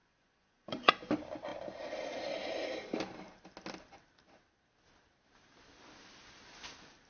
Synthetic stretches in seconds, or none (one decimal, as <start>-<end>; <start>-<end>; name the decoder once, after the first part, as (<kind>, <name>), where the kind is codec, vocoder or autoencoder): 0.0-0.9 (vocoder, Vocos)